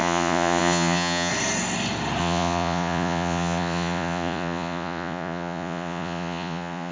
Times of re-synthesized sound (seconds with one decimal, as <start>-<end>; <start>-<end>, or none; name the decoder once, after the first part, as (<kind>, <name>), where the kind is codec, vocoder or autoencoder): 0.0-1.3 (vocoder, Vocos); 2.2-6.9